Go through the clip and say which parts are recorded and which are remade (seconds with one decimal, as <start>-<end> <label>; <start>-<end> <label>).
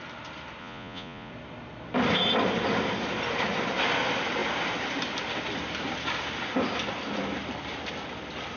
0.0-0.6 recorded; 0.6-1.3 remade; 1.3-8.6 recorded